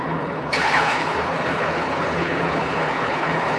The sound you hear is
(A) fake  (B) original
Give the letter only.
A